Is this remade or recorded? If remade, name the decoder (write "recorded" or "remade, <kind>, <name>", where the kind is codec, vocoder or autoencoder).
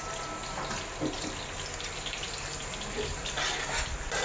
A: recorded